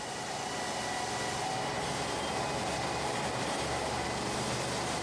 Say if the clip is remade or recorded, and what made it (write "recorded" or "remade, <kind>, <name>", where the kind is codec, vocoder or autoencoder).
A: recorded